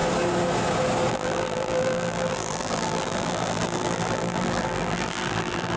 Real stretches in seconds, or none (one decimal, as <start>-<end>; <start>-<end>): 0.0-1.1